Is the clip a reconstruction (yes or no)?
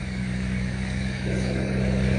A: yes